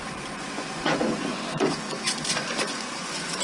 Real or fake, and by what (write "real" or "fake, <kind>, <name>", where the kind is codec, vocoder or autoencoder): fake, vocoder, Vocos